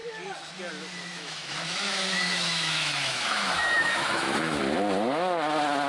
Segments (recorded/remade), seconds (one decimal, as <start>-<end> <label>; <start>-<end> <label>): 0.0-1.1 recorded; 1.1-4.6 remade; 4.6-5.9 recorded